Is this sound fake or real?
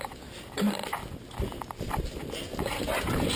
real